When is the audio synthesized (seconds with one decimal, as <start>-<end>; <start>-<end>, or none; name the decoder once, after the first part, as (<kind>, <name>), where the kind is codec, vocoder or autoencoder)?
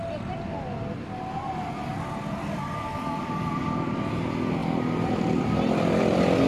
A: none